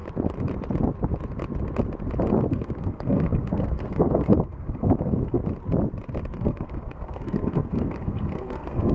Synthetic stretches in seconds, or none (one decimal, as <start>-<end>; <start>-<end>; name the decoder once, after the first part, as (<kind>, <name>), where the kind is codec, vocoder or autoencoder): 2.5-5.4 (codec, SNAC); 6.4-8.9